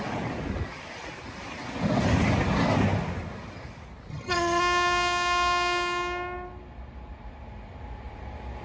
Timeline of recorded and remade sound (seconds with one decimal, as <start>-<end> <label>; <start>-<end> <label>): 0.0-4.1 recorded; 4.1-4.6 remade; 4.6-8.6 recorded

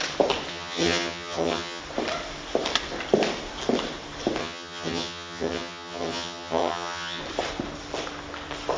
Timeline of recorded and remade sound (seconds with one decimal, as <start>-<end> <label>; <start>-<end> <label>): 0.0-0.5 recorded; 0.5-1.8 remade; 1.8-4.4 recorded; 4.4-7.2 remade; 7.2-8.8 recorded